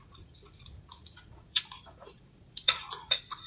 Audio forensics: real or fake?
fake